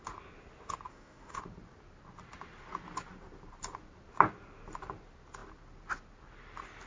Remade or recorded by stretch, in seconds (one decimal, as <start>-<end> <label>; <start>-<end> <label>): 0.0-0.9 recorded; 0.9-1.4 remade; 1.4-6.9 recorded